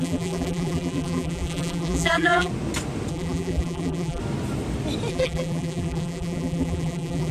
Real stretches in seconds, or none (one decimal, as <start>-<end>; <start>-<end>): 2.5-3.1; 4.2-5.1